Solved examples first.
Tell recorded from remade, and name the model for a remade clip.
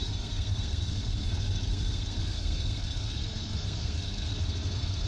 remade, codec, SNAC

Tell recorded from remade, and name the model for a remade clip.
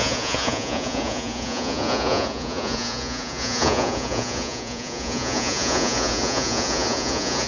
remade, vocoder, Vocos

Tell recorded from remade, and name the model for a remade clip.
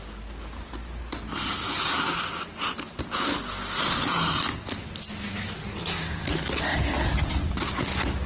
recorded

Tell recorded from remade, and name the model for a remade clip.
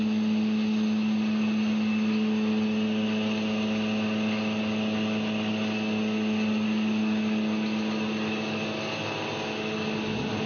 recorded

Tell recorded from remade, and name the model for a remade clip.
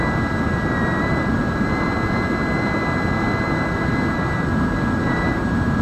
recorded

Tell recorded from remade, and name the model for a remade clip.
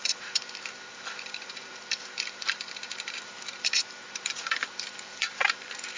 remade, vocoder, BigVGAN v2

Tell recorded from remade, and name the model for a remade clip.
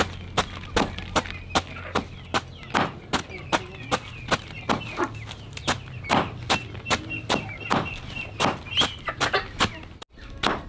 recorded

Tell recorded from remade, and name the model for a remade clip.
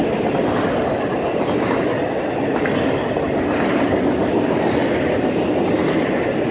recorded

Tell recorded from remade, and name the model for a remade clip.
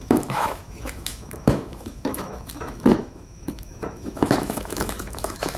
remade, autoencoder, DAC-VAE